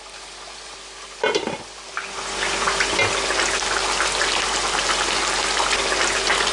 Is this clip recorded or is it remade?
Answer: recorded